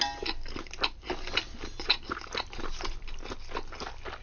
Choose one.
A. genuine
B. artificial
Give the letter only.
A